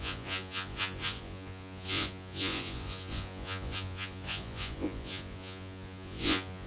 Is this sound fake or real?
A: fake